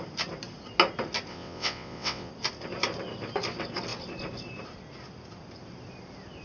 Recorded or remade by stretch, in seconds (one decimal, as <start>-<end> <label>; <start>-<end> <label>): 0.0-1.3 recorded; 1.3-2.3 remade; 2.3-6.4 recorded